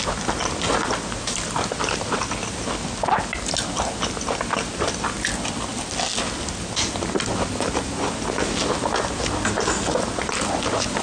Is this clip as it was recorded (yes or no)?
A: yes